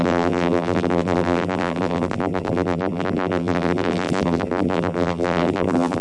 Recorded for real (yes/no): no